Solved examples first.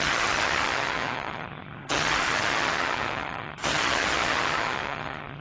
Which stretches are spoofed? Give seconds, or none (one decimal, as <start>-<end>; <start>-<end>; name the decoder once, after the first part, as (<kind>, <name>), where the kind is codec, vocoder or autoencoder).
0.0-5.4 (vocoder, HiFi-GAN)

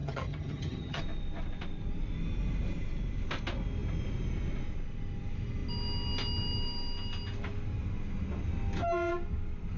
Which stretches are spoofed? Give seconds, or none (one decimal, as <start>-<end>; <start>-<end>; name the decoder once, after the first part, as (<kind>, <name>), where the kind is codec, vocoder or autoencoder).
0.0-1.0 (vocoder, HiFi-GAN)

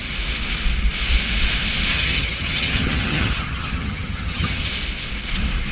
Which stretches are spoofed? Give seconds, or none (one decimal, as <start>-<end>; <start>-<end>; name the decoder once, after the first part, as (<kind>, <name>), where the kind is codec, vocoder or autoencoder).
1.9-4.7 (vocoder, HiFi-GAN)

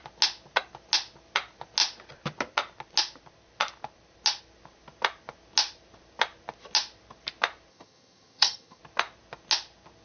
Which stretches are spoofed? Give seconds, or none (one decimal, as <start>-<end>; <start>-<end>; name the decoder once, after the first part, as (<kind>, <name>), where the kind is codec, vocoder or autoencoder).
7.7-8.8 (vocoder, HiFi-GAN)

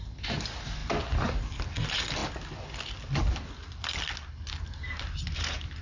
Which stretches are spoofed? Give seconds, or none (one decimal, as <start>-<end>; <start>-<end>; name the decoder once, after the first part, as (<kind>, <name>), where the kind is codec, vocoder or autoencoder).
none

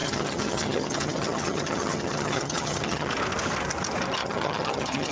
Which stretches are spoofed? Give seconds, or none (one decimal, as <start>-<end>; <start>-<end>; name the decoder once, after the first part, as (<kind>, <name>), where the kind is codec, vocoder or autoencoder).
0.0-3.1 (vocoder, HiFi-GAN); 4.2-5.1

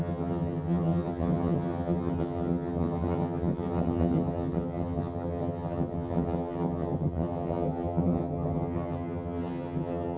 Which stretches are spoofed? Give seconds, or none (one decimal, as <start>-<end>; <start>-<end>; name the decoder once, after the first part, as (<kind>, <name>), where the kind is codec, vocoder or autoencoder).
0.0-10.2 (vocoder, HiFi-GAN)